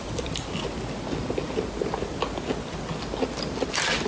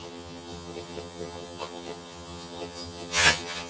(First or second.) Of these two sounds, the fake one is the second